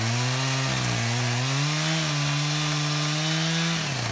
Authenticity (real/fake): real